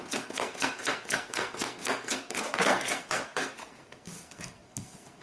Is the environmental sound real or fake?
fake